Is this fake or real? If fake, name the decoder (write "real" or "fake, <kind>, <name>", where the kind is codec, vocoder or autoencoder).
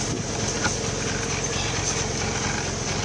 real